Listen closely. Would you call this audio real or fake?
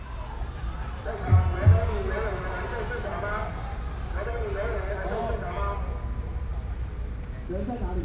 real